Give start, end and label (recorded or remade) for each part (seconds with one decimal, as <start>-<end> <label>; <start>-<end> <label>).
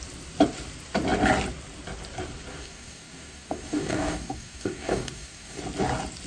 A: 0.0-2.5 recorded; 2.5-5.6 remade; 5.6-6.3 recorded